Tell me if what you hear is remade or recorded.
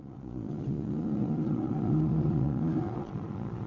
remade